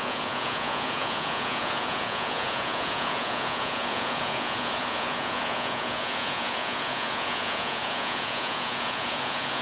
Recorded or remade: remade